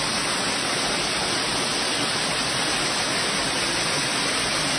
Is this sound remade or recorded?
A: recorded